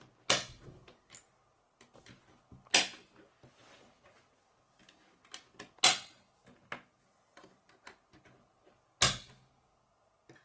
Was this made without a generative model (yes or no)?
yes